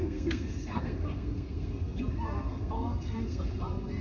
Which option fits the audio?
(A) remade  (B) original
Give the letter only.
A